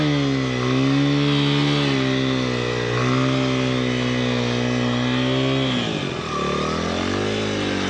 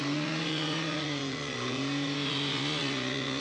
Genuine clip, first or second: first